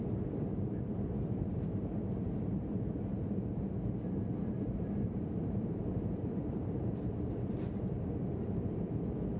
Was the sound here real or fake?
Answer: fake